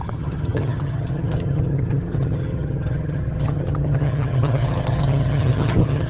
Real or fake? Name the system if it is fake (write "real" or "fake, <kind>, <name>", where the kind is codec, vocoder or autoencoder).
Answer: fake, vocoder, HiFi-GAN